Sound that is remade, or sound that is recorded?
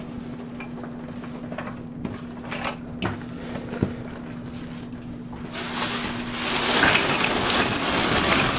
recorded